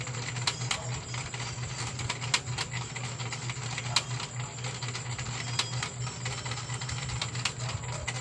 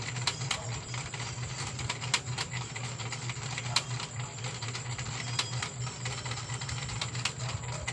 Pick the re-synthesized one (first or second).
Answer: second